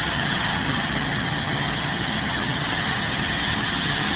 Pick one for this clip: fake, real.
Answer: fake